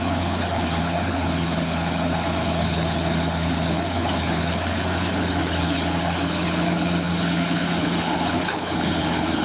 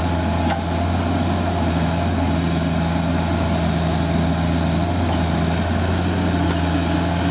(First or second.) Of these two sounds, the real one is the second